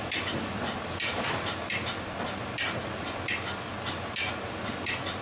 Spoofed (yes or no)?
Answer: no